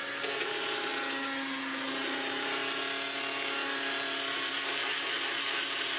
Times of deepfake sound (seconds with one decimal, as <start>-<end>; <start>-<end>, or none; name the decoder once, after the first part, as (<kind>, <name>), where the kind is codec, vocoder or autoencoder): none